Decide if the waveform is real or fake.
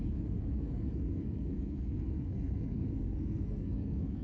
fake